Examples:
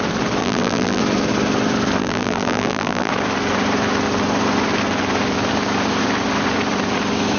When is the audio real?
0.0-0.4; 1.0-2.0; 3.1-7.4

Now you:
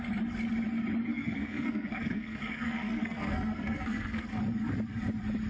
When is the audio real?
0.0-1.1; 4.4-5.5